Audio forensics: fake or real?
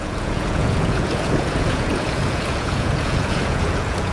fake